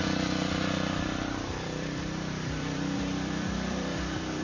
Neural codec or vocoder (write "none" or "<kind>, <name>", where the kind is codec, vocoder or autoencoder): vocoder, BigVGAN v2